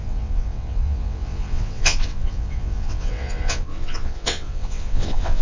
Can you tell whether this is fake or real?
fake